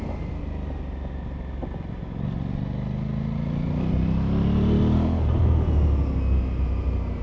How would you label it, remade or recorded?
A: recorded